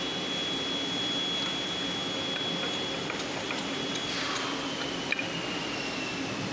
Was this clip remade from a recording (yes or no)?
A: no